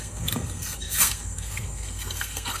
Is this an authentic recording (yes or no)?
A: no